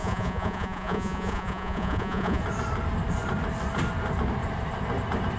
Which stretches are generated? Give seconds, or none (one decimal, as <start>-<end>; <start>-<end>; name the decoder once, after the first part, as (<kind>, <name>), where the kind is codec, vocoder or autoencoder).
0.0-2.4 (vocoder, Vocos)